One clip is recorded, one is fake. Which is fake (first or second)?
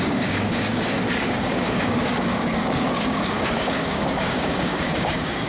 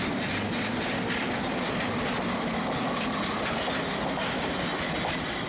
first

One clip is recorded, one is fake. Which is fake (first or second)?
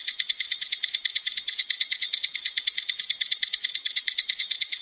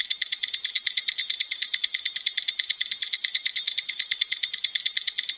first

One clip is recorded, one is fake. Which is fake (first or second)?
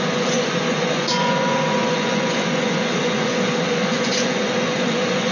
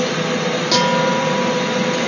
first